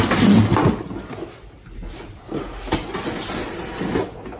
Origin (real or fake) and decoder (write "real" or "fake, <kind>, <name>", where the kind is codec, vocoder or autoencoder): real